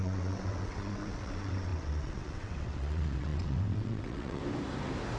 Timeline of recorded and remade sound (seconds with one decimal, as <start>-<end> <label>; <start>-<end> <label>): 0.0-4.4 remade; 4.4-5.2 recorded